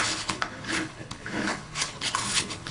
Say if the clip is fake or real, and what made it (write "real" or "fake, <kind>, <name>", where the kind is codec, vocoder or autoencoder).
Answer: fake, codec, HILCodec